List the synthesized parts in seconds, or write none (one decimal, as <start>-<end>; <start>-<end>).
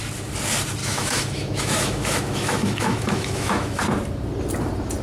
0.8-3.8